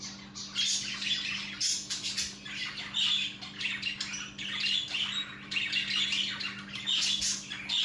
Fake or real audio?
real